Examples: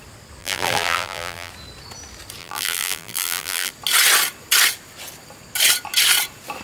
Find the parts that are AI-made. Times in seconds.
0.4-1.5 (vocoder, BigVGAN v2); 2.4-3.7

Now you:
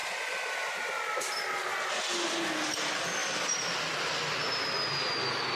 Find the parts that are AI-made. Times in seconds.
0.0-0.6 (vocoder, BigVGAN v2); 3.2-3.8